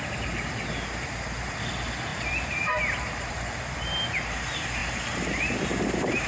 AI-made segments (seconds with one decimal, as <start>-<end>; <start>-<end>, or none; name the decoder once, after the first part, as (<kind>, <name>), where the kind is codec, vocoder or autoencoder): 2.1-3.4 (vocoder, BigVGAN v2)